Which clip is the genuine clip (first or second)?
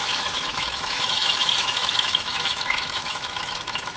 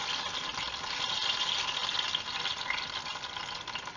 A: second